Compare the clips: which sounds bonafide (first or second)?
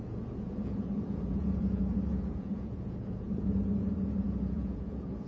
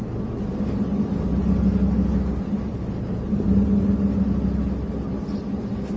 second